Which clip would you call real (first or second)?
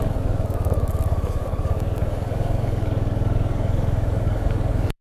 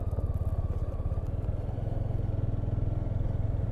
second